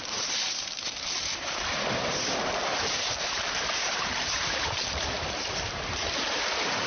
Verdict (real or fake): fake